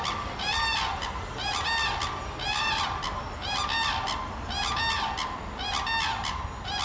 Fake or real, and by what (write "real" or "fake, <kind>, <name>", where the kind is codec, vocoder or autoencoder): real